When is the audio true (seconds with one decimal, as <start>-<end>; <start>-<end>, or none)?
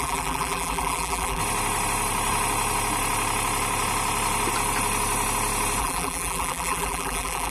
1.4-5.8